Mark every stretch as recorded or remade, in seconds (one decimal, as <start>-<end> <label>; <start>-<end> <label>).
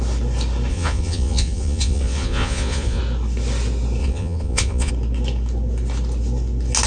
0.0-0.7 recorded; 0.7-3.0 remade; 3.0-4.0 recorded; 4.0-4.9 remade; 4.9-6.9 recorded